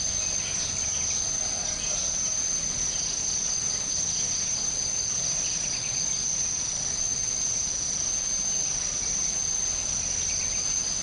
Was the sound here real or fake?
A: real